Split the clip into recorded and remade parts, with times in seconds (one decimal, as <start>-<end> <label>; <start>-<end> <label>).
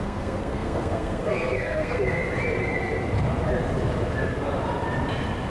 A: 0.0-2.2 remade; 2.2-5.5 recorded